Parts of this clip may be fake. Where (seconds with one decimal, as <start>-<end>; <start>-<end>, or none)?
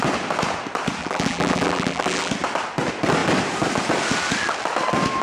1.0-2.3